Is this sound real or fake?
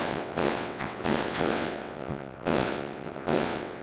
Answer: fake